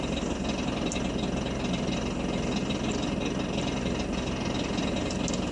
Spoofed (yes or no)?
no